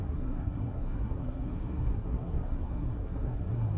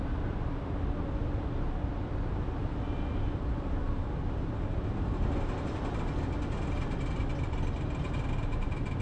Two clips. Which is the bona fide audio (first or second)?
second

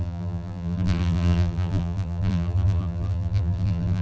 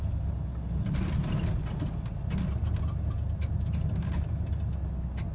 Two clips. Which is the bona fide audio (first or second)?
second